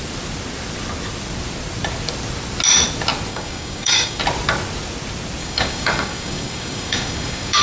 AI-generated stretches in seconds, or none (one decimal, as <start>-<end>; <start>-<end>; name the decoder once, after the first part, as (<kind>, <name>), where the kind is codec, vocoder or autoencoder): 3.3-4.2 (codec, DAC); 5.4-7.6